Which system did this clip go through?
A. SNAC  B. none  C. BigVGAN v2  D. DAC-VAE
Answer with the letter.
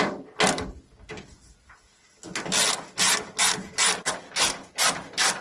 B